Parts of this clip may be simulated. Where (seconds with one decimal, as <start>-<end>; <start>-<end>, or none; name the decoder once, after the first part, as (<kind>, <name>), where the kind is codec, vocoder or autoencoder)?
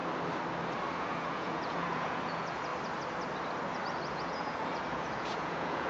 1.0-2.7 (vocoder, Vocos); 4.1-5.9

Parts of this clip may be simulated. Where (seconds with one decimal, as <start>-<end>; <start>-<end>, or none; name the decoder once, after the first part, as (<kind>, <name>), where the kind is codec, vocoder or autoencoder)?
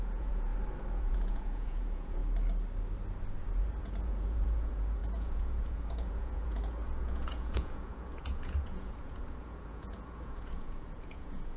0.0-0.5 (vocoder, Vocos); 1.0-2.2; 3.8-11.6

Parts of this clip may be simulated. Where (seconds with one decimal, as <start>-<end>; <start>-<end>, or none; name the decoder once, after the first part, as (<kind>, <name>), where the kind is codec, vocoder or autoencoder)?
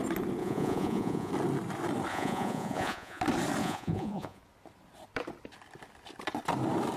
0.4-1.3 (vocoder, Vocos); 2.1-3.2; 3.6-4.4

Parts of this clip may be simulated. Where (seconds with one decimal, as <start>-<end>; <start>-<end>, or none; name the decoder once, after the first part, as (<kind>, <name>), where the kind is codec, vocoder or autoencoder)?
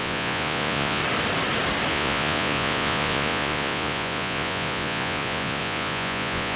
0.0-1.0 (vocoder, Vocos); 1.9-6.6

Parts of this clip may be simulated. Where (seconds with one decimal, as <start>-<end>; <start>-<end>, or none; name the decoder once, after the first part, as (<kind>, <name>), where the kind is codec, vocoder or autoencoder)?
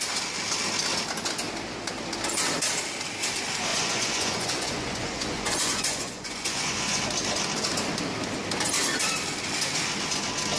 3.7-7.0 (vocoder, Vocos)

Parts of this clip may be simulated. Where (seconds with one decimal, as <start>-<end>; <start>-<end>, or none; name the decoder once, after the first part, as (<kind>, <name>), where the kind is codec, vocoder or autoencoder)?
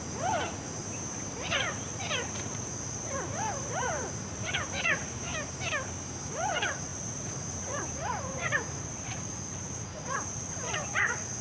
0.0-0.8 (vocoder, Vocos); 1.3-5.3; 6.2-11.4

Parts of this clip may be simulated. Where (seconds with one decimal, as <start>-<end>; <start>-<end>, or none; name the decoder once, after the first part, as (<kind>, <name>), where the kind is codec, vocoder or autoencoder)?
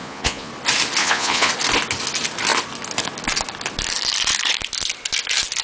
0.0-0.5 (vocoder, Vocos); 1.0-1.5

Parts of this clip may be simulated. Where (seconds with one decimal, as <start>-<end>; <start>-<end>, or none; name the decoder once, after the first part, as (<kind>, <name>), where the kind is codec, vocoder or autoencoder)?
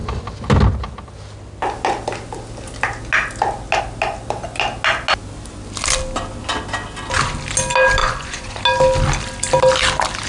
8.0-8.6 (vocoder, Vocos)